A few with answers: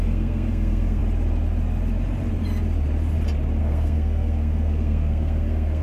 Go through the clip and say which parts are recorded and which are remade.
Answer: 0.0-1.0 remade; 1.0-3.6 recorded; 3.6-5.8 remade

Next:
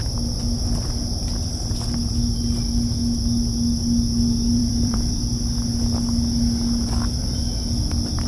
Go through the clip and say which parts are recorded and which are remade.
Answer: 0.0-4.6 recorded; 4.6-5.1 remade; 5.1-8.3 recorded

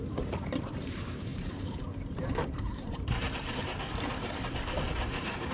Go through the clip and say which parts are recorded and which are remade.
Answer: 0.0-5.5 remade

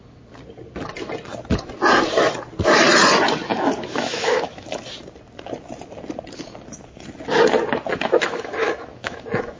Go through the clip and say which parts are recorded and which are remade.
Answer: 0.0-3.5 recorded; 3.5-4.8 remade; 4.8-7.9 recorded; 7.9-9.6 remade

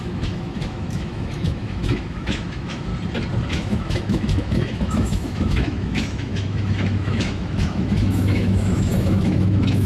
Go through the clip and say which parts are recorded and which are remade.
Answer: 0.0-2.9 remade; 2.9-3.5 recorded; 3.5-9.9 remade

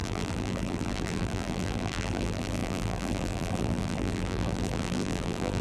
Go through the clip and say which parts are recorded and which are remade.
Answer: 0.0-5.6 remade